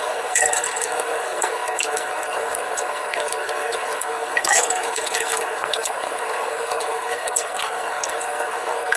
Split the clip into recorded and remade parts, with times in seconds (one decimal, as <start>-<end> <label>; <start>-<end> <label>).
0.0-9.0 remade